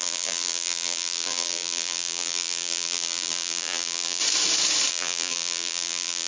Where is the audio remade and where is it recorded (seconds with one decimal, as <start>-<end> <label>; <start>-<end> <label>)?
0.0-4.2 remade; 4.2-4.9 recorded; 4.9-6.3 remade